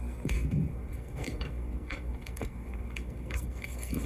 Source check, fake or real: fake